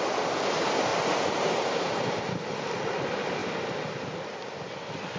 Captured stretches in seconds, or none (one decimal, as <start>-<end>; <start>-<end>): 0.0-0.9; 2.1-5.2